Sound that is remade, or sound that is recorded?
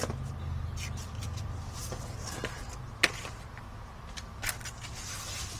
recorded